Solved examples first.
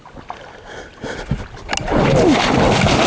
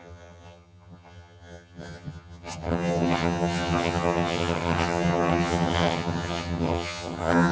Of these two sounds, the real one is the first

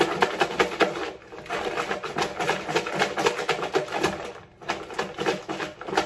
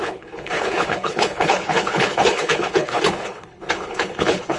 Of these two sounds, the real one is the first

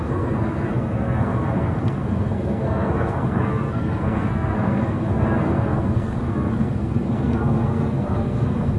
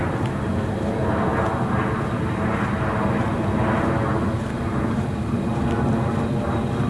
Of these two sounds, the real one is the second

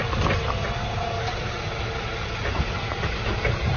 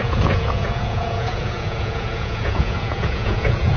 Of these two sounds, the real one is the first